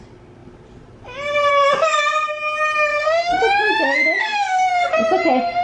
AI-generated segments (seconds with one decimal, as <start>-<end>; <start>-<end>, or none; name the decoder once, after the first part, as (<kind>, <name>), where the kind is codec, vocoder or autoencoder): 2.9-3.4 (codec, SNAC); 4.2-4.9